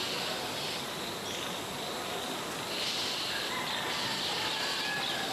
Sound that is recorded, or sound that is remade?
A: recorded